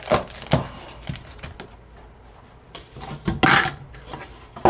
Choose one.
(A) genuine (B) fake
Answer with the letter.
A